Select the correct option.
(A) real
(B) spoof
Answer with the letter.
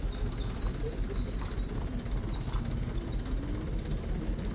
A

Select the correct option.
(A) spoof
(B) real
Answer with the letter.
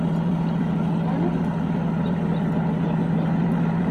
B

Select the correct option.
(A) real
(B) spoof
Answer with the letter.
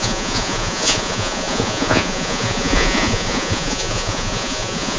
B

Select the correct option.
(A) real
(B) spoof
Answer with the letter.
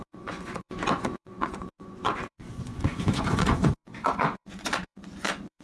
B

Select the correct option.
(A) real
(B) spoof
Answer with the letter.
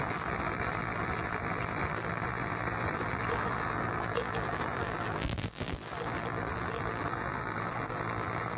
B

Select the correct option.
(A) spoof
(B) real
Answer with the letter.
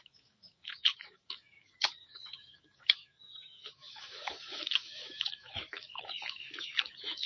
A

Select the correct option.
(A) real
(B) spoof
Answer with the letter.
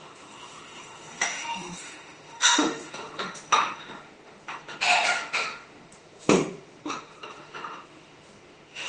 B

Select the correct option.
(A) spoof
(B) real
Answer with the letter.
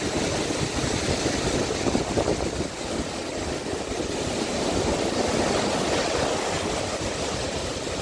B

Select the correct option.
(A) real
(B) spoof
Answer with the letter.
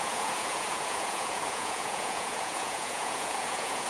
B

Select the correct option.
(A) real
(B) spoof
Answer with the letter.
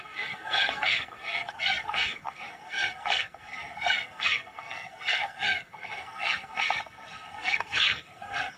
B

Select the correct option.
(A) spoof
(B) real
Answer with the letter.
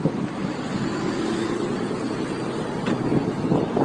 B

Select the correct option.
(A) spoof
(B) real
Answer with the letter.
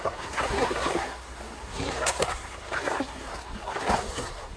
A